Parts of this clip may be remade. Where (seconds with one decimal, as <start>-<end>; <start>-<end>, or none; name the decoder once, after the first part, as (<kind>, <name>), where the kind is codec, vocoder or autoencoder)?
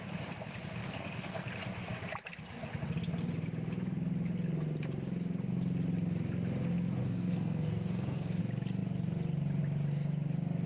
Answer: 0.8-1.5 (codec, SNAC); 7.0-8.4